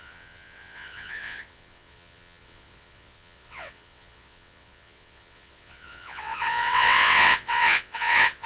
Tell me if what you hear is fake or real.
fake